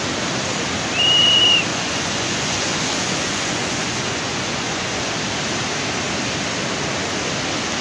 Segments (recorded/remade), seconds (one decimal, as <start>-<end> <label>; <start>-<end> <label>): 0.0-1.7 recorded; 1.7-5.1 remade; 5.1-7.8 recorded